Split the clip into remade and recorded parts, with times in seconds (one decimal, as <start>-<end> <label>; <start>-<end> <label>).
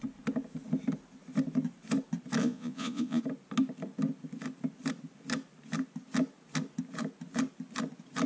0.0-2.4 recorded; 2.4-3.2 remade; 3.2-8.3 recorded